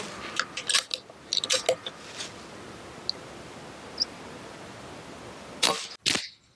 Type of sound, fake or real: real